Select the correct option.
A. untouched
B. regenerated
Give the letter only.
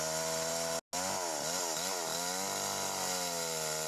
A